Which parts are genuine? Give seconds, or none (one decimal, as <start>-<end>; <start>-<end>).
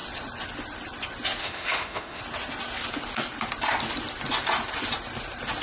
0.0-1.4; 2.2-5.6